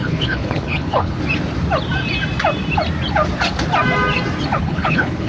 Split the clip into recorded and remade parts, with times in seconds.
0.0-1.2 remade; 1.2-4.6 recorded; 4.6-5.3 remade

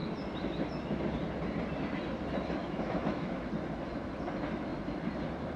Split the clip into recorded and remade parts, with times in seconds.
0.0-2.6 recorded; 2.6-3.5 remade; 3.5-5.6 recorded

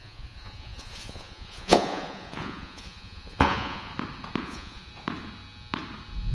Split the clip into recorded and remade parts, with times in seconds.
0.0-3.9 remade; 3.9-4.4 recorded; 4.4-4.9 remade; 4.9-6.3 recorded

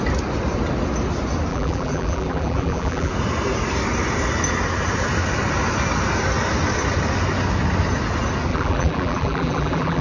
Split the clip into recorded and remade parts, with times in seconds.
0.0-1.5 recorded; 1.5-3.1 remade; 3.1-8.5 recorded; 8.5-10.0 remade

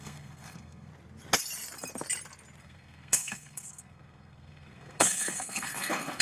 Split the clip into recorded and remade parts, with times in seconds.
0.0-0.9 remade; 0.9-2.6 recorded; 2.6-6.2 remade

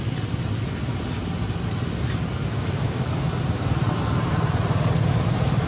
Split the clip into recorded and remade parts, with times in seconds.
0.0-2.4 recorded; 2.4-3.1 remade; 3.1-5.7 recorded